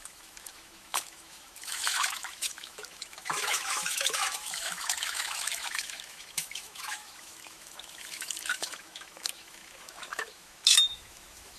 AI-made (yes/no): yes